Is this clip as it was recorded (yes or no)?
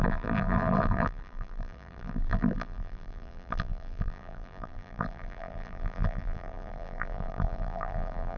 no